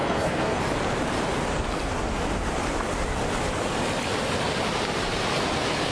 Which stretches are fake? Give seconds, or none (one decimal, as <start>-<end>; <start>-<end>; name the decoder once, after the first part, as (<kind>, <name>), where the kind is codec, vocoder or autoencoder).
0.0-0.6 (codec, SNAC)